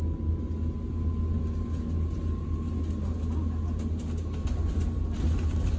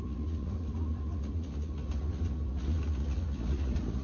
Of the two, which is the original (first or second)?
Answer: first